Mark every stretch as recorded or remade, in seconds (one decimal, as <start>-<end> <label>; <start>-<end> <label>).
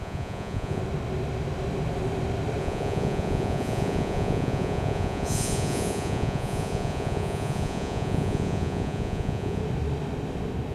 0.0-0.8 remade; 0.8-2.6 recorded; 2.6-9.6 remade; 9.6-10.7 recorded